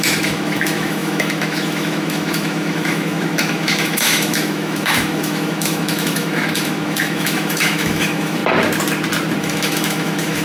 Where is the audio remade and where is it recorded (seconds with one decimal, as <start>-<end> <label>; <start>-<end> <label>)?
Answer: 0.0-8.4 remade; 8.4-9.4 recorded; 9.4-10.4 remade